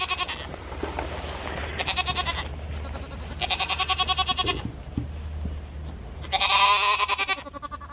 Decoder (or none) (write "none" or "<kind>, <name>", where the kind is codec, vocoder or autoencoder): none